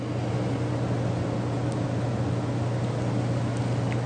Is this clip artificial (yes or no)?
no